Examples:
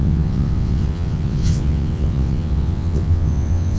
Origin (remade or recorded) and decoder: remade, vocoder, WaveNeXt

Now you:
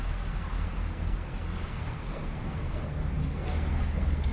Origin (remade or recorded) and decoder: remade, codec, SNAC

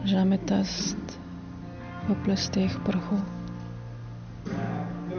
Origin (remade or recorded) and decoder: recorded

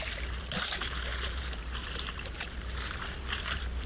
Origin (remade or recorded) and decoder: remade, vocoder, BigVGAN v2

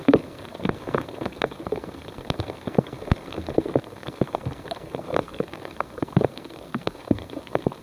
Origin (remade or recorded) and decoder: remade, codec, SNAC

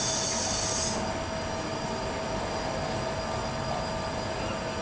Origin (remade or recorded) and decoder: recorded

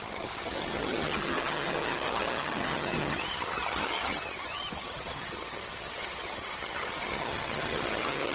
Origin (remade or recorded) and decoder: remade, vocoder, HiFi-GAN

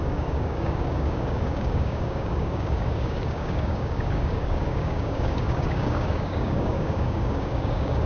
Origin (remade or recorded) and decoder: remade, codec, DAC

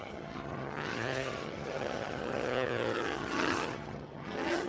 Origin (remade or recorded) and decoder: remade, vocoder, HiFi-GAN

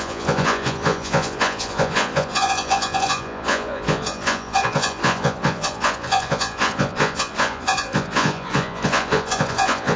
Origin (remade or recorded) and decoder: remade, vocoder, Vocos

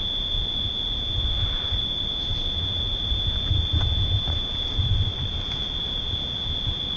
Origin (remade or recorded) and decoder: remade, vocoder, BigVGAN v2